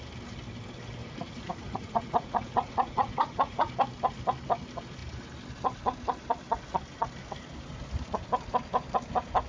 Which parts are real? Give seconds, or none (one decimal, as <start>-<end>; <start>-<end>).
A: 0.0-1.0; 3.7-9.5